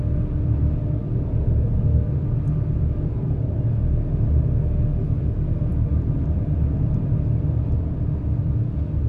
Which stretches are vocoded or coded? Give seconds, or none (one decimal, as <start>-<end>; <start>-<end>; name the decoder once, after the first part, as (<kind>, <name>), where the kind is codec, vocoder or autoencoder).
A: 5.7-8.5 (vocoder, BigVGAN v2)